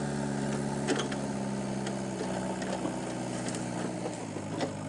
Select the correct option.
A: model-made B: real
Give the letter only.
B